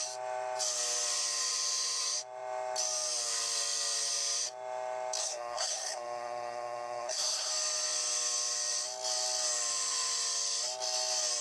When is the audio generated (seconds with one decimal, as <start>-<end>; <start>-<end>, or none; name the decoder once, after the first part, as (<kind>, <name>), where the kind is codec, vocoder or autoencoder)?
5.2-7.5 (codec, SNAC)

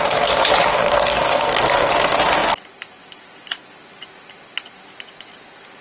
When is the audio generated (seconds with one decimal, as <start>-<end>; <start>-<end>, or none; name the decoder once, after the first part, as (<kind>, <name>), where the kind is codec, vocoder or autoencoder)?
0.8-1.9 (codec, SNAC)